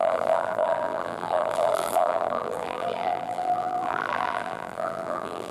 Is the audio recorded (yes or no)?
no